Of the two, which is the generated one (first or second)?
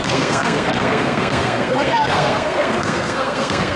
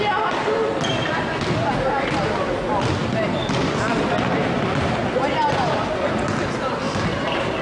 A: first